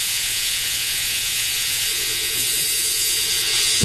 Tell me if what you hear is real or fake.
fake